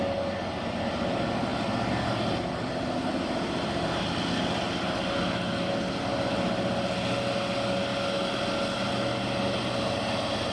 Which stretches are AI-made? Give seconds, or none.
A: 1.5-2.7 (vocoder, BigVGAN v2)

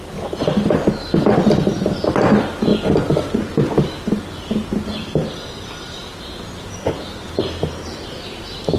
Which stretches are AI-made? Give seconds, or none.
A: 0.0-2.7 (vocoder, BigVGAN v2); 3.4-8.8

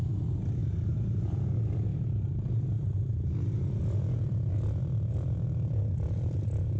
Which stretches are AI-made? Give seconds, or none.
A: 0.0-6.8 (vocoder, BigVGAN v2)

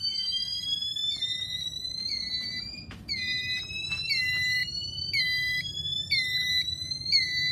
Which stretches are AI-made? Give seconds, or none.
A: 6.8-7.5 (vocoder, BigVGAN v2)

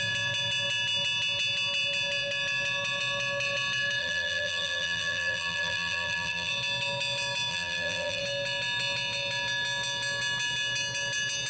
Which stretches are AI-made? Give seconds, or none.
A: 4.0-6.5 (vocoder, BigVGAN v2); 7.5-8.2